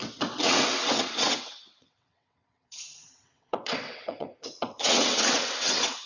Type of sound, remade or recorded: remade